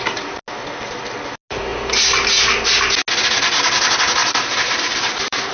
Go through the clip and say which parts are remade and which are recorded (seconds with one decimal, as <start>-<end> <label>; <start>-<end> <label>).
0.0-4.2 recorded; 4.2-5.5 remade